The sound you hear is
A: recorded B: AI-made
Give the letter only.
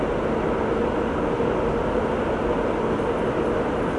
A